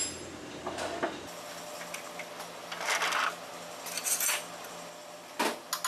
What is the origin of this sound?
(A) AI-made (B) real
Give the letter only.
B